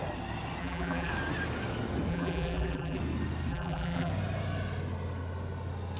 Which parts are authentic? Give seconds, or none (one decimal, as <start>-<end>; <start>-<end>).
0.0-0.6; 1.1-2.1; 3.0-3.5; 4.1-6.0